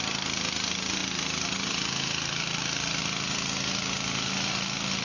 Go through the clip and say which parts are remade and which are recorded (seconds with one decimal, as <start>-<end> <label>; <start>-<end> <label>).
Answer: 0.0-5.0 recorded